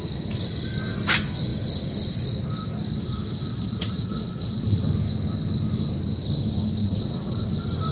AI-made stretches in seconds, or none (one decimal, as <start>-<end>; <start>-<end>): 3.5-4.9; 6.8-7.5